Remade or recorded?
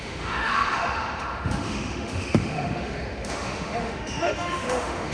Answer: remade